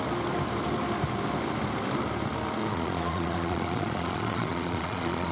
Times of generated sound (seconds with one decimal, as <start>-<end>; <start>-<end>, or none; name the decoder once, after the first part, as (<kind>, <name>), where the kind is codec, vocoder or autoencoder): 2.6-5.3 (vocoder, Vocos)